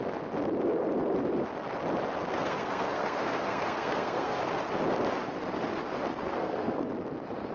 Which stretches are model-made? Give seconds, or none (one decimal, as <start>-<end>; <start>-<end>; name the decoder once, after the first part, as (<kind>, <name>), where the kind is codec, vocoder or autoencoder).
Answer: 2.3-4.4 (codec, SNAC); 6.1-6.9

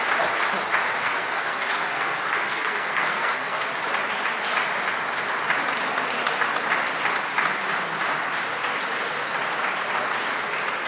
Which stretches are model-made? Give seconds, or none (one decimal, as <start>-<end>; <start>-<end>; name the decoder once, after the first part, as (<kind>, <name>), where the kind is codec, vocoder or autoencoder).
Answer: 1.0-3.7 (codec, SNAC)